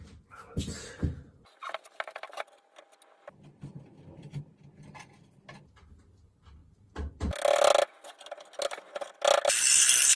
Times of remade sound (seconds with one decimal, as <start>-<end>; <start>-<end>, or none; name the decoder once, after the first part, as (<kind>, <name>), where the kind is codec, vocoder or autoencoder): none